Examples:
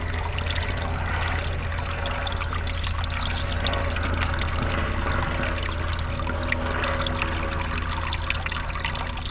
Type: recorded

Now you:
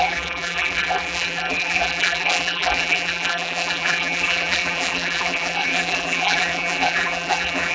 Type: remade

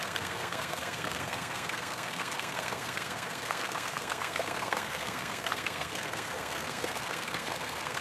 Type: remade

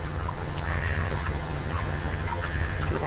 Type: remade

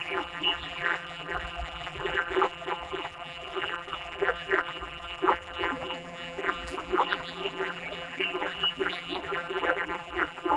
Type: remade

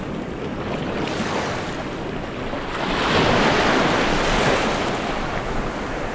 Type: recorded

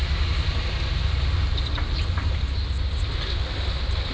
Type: recorded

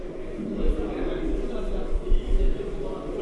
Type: recorded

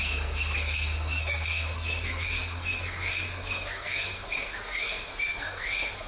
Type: remade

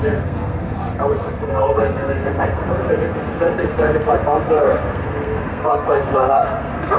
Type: remade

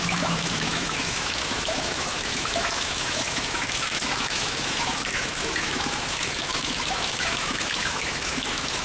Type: remade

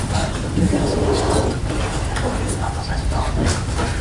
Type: recorded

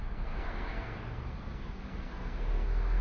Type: remade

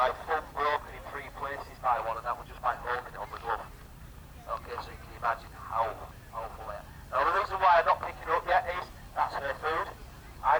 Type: remade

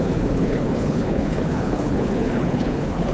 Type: remade